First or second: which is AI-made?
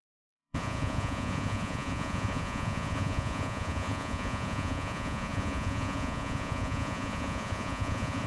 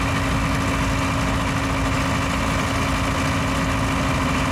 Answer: first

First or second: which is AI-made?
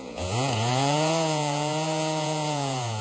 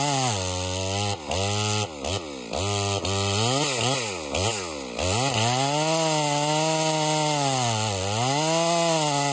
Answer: first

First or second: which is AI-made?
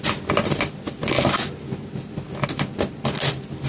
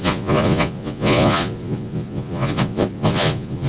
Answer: second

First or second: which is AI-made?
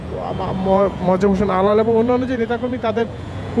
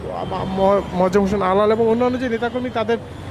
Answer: first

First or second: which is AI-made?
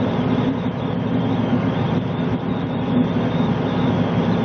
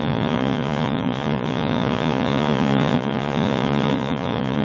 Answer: second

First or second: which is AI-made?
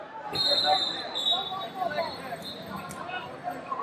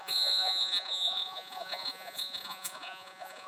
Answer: second